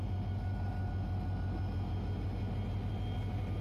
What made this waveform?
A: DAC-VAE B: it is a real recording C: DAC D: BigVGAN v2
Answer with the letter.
B